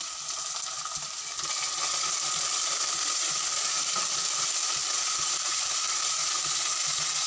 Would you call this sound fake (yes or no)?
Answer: no